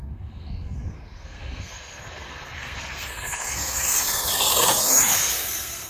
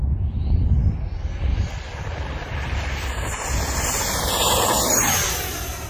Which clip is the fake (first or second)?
first